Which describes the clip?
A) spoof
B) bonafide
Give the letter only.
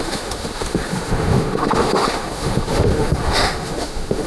A